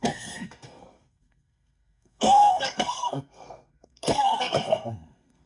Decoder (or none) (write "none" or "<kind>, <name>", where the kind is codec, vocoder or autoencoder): codec, SNAC